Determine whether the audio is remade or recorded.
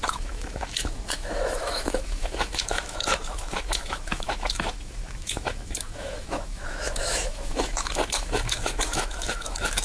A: remade